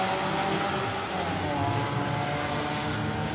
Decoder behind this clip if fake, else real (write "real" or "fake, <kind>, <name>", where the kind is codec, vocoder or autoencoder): real